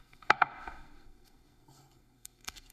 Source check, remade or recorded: remade